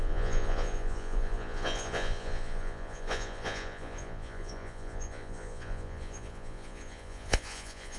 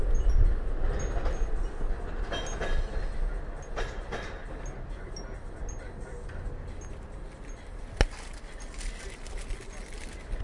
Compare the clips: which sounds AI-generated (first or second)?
first